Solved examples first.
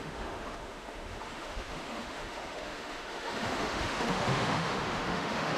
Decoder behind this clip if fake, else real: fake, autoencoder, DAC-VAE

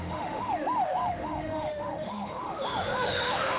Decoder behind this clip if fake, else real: fake, autoencoder, DAC-VAE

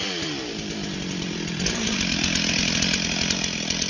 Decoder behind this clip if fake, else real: real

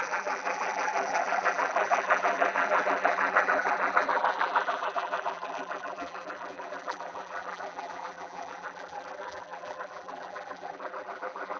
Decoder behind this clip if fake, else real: fake, vocoder, BigVGAN v2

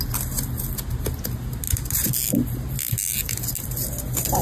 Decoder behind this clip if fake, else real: real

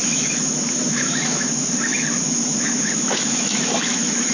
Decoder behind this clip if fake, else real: fake, autoencoder, DAC-VAE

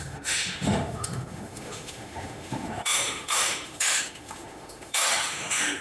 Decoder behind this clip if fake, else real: fake, autoencoder, DAC-VAE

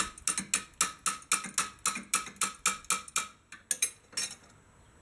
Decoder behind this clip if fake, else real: real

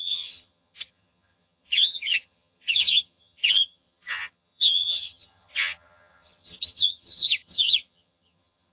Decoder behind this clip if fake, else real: fake, vocoder, HiFi-GAN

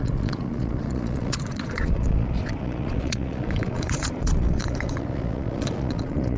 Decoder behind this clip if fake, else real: fake, vocoder, Vocos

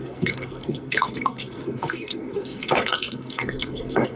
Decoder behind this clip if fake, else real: fake, codec, SNAC